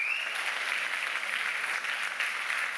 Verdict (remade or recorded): recorded